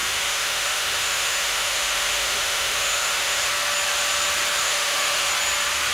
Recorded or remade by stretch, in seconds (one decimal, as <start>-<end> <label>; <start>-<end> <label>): 0.0-3.5 remade; 3.5-4.6 recorded; 4.6-5.3 remade; 5.3-5.9 recorded